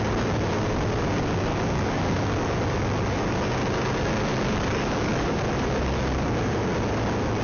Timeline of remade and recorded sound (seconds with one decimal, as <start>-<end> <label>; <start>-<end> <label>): 0.0-1.5 recorded; 1.5-2.5 remade; 2.5-4.3 recorded; 4.3-5.4 remade; 5.4-7.4 recorded